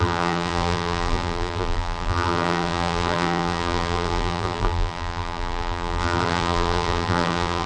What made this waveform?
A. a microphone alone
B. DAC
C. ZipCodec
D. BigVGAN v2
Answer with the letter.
D